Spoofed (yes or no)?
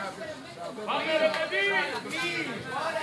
no